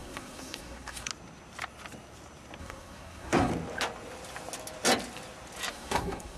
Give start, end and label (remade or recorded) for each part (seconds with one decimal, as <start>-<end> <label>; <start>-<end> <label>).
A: 0.0-1.1 remade; 1.1-2.6 recorded; 2.6-3.5 remade; 3.5-5.7 recorded; 5.7-6.4 remade